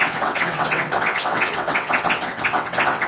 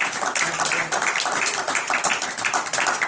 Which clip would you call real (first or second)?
second